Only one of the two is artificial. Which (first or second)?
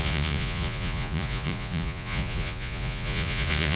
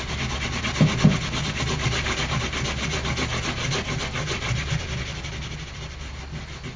first